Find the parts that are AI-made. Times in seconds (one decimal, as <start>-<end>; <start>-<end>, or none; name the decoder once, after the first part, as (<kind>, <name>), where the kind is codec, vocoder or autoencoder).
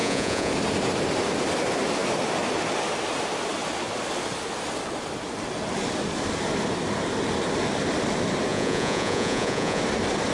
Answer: 0.0-0.5 (vocoder, Vocos); 8.5-9.8